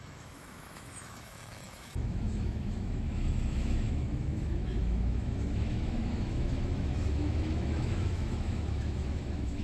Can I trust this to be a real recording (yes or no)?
no